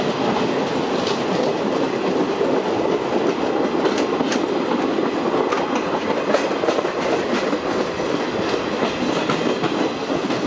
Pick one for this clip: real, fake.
real